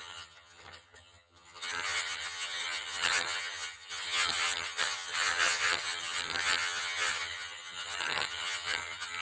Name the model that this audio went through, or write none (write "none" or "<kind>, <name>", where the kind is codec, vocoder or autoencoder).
vocoder, HiFi-GAN